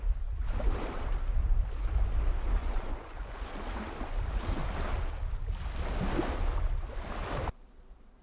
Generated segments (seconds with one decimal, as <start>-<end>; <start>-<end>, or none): 2.6-3.5